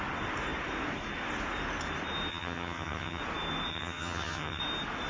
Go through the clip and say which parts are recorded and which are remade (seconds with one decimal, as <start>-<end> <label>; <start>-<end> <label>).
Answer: 0.0-2.3 recorded; 2.3-3.2 remade; 3.2-3.7 recorded; 3.7-4.6 remade; 4.6-5.1 recorded